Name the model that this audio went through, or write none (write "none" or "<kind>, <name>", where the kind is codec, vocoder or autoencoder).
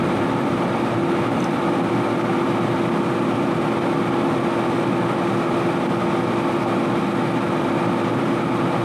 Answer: none